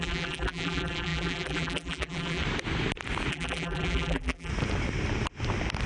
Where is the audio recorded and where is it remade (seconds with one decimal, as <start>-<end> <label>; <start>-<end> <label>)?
0.0-2.4 remade; 2.4-3.3 recorded; 3.3-4.5 remade; 4.5-5.9 recorded